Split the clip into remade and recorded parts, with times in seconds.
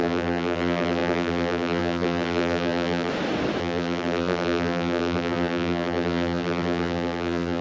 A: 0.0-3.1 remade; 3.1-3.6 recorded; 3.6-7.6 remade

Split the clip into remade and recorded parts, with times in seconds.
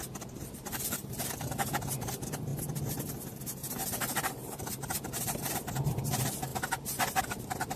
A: 0.0-2.5 remade; 2.5-3.1 recorded; 3.1-6.5 remade; 6.5-7.2 recorded; 7.2-7.8 remade